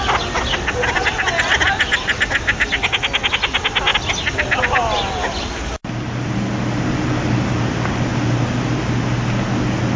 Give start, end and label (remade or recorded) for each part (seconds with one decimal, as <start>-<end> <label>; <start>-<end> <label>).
0.0-10.0 recorded